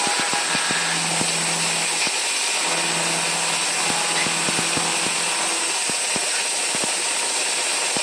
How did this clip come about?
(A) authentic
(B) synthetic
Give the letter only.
A